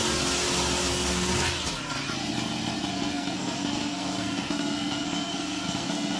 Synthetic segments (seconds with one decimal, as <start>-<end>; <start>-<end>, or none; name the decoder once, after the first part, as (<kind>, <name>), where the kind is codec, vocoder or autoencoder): 0.9-1.3 (codec, SNAC); 2.9-6.2